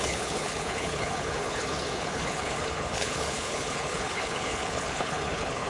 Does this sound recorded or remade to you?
remade